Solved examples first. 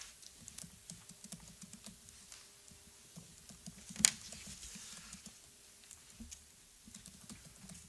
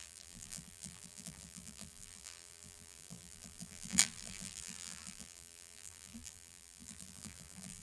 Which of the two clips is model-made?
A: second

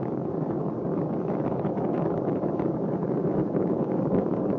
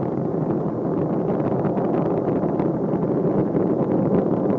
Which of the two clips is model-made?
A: first